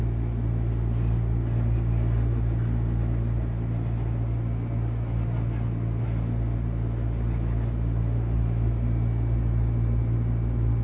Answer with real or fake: real